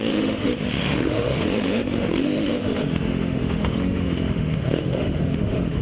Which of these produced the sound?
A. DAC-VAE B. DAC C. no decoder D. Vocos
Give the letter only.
A